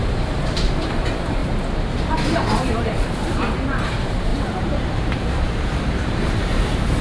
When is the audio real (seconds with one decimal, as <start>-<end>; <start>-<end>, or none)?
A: 1.4-2.6